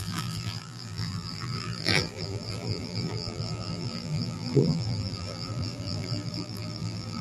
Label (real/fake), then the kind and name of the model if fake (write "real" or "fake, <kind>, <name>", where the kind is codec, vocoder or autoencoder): fake, vocoder, BigVGAN v2